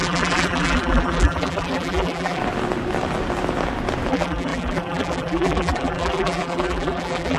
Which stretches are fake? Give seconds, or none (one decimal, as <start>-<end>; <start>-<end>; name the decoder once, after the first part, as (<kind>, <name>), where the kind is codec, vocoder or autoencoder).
0.0-2.4 (vocoder, BigVGAN v2); 4.1-7.4